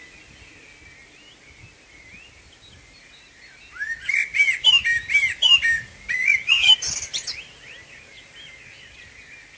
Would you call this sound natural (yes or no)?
yes